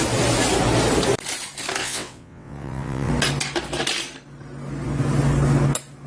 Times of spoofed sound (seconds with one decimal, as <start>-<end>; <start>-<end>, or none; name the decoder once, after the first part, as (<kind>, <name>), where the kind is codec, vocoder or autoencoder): 1.8-3.1 (vocoder, WaveNeXt)